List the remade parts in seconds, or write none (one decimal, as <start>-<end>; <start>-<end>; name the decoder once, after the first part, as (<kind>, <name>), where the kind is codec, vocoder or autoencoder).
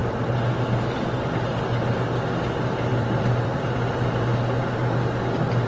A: 2.9-3.5 (vocoder, BigVGAN v2)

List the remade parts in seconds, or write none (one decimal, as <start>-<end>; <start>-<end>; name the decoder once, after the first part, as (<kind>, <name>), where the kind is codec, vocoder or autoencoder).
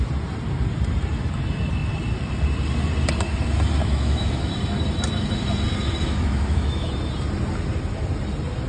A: 3.8-4.5 (autoencoder, DAC-VAE); 6.0-6.9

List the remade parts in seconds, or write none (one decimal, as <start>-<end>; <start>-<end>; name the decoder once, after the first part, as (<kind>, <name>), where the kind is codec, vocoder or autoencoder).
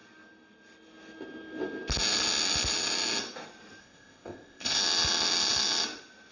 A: 3.8-4.8 (codec, ZipCodec)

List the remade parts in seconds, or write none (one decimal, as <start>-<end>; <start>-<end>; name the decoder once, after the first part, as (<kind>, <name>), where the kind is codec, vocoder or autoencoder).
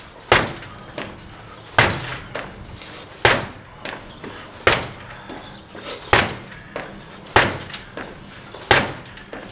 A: none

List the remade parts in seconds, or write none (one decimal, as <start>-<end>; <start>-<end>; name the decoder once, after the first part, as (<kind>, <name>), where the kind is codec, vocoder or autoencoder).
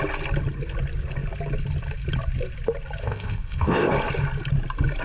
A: 3.0-3.9 (codec, ZipCodec)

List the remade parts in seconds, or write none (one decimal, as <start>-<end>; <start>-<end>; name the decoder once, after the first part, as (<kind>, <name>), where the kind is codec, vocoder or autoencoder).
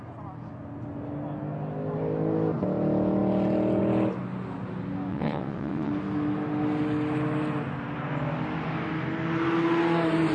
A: 5.1-5.9 (vocoder, WaveNeXt)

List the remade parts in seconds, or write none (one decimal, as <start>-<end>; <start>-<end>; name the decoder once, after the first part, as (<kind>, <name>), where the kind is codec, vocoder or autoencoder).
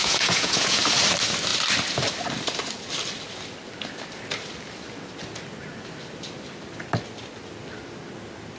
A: 0.0-0.8 (vocoder, Vocos)